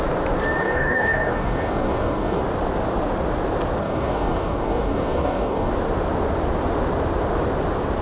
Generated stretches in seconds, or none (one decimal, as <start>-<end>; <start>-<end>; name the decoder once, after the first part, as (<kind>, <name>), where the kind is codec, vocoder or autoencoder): 0.6-2.4 (codec, DAC); 3.8-5.7